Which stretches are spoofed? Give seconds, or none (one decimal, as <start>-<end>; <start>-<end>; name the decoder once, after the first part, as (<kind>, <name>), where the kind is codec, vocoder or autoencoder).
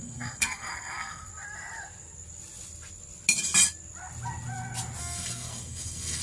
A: 0.0-1.3 (codec, SNAC); 5.0-6.2